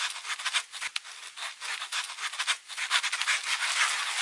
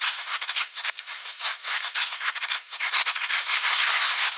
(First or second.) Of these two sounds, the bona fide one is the first